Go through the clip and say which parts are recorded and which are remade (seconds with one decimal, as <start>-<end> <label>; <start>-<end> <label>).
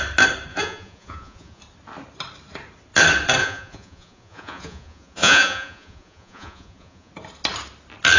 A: 0.0-0.5 recorded; 0.5-1.6 remade; 1.6-3.4 recorded; 3.4-7.1 remade; 7.1-8.2 recorded